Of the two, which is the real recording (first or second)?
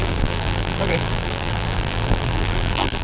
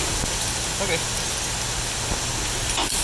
second